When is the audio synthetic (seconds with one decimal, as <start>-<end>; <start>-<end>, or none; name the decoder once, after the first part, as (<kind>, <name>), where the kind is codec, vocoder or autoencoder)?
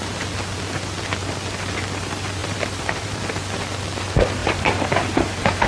2.4-3.2 (vocoder, BigVGAN v2); 4.4-5.7